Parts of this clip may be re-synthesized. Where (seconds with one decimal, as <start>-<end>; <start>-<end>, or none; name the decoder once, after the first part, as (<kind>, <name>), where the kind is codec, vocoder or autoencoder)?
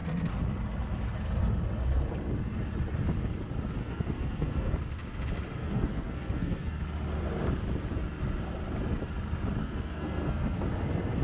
3.8-4.8 (codec, SNAC); 5.6-6.8; 9.6-10.6